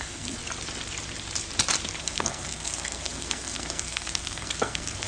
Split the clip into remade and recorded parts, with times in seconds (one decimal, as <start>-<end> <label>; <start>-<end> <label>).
0.0-0.4 remade; 0.4-2.0 recorded; 2.0-5.1 remade